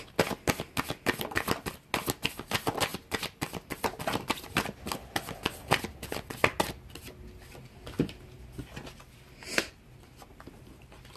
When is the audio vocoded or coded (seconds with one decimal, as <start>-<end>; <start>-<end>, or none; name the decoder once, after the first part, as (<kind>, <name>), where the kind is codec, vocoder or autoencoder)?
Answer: 2.9-5.2 (vocoder, BigVGAN v2)